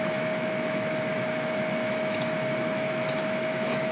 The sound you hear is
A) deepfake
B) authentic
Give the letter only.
A